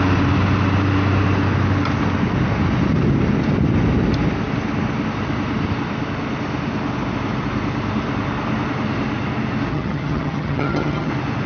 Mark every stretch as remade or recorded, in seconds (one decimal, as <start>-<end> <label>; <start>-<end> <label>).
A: 0.0-9.7 recorded; 9.7-11.1 remade; 11.1-11.5 recorded